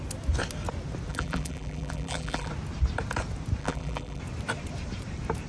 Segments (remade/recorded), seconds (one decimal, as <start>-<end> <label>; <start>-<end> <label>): 0.0-1.1 recorded; 1.1-2.5 remade; 2.5-3.6 recorded; 3.6-4.2 remade; 4.2-5.5 recorded